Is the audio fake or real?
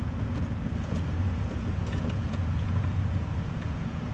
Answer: fake